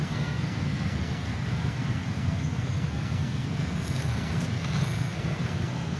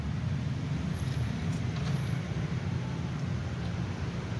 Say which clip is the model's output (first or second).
first